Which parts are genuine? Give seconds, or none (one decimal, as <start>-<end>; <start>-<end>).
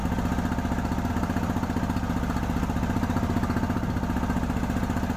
0.0-5.2